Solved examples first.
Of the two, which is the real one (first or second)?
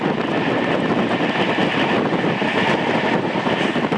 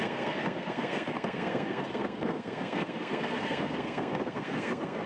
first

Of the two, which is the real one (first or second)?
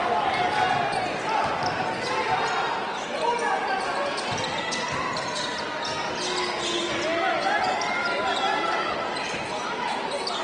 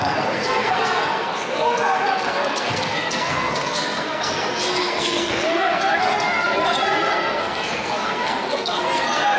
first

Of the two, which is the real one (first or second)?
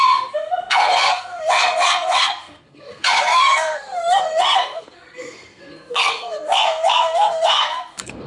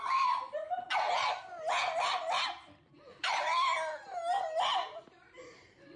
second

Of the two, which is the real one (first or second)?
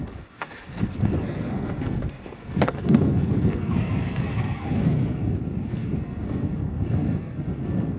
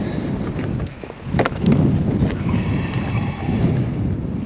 second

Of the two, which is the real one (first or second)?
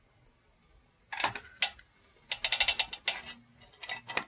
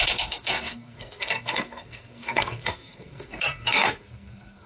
first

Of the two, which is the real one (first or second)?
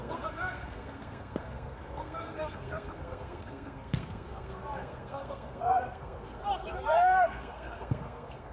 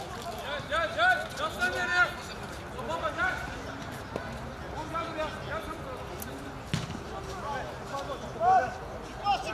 second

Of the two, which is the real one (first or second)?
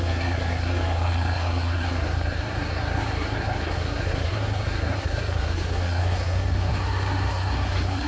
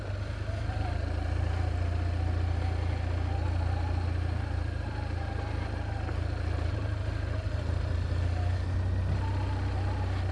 second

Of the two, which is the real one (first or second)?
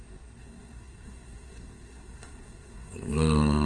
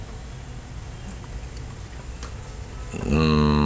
second